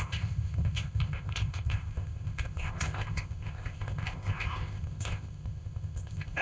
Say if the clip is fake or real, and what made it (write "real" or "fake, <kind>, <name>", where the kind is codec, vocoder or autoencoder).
fake, codec, ZipCodec